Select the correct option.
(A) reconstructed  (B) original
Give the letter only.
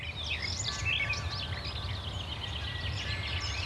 B